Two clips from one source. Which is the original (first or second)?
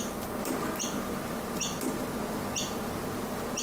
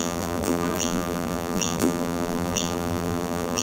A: first